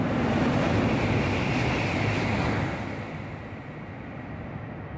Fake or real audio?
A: real